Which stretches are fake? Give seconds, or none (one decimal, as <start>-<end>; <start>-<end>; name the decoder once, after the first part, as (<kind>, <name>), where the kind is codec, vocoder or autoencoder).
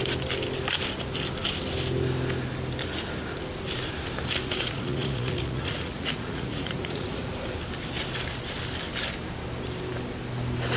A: 4.4-7.3 (vocoder, Vocos)